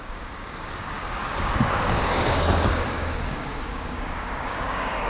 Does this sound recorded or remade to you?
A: remade